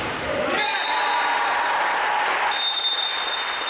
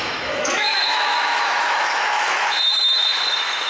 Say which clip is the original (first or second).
first